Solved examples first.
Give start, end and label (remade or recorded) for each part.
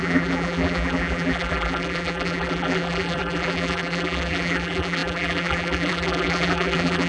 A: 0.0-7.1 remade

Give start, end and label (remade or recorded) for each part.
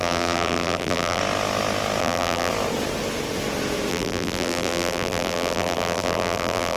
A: 0.0-1.2 remade; 1.2-2.0 recorded; 2.0-2.5 remade; 2.5-3.9 recorded; 3.9-6.8 remade